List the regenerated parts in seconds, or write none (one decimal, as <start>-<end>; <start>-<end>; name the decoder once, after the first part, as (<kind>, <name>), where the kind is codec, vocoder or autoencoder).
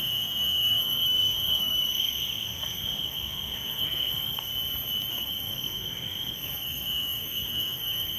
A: 0.0-4.5 (codec, SNAC); 5.1-8.2